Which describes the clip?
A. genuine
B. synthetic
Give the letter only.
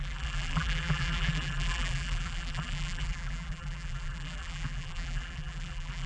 B